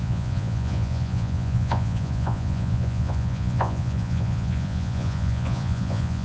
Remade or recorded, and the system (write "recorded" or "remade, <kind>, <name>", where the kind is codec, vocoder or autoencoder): remade, vocoder, Vocos